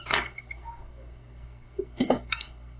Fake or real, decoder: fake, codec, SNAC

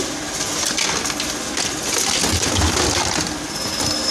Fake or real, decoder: real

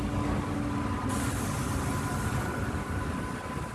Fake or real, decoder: real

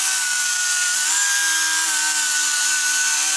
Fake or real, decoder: fake, vocoder, BigVGAN v2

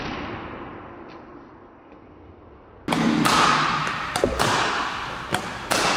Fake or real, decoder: real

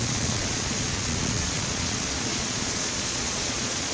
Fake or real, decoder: fake, vocoder, Vocos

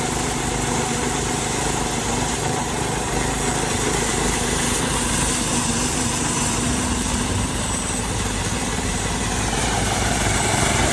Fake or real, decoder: fake, vocoder, BigVGAN v2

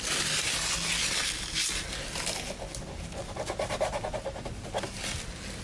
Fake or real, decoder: real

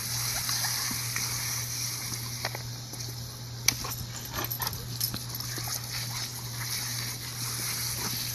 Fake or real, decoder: fake, vocoder, BigVGAN v2